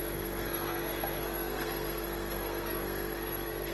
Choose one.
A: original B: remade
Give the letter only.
B